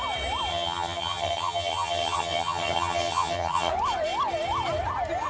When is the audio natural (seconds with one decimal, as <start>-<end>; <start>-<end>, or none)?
0.0-0.5; 3.7-5.3